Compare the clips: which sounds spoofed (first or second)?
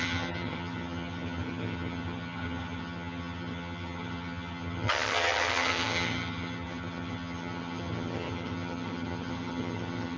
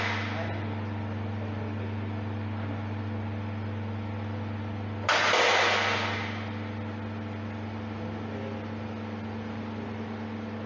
first